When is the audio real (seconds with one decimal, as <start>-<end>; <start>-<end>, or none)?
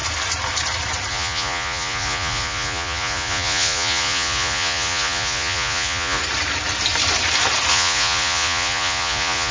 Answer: 0.0-1.1; 6.2-7.7